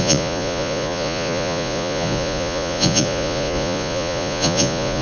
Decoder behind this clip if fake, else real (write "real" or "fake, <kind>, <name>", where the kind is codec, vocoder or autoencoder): fake, vocoder, Vocos